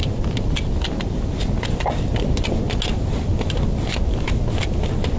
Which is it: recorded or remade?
recorded